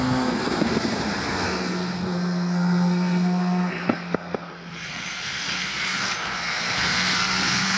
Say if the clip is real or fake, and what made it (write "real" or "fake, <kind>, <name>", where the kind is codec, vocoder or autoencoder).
fake, codec, SNAC